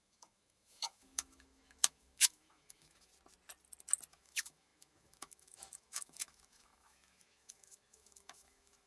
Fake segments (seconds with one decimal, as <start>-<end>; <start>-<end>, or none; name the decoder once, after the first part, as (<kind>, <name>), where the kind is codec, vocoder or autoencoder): 0.0-3.1 (autoencoder, DAC-VAE); 4.1-8.9